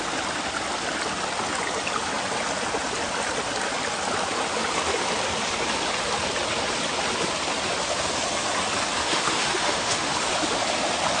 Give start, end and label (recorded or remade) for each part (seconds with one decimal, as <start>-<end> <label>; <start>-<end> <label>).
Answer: 0.0-9.0 recorded; 9.0-10.3 remade; 10.3-11.2 recorded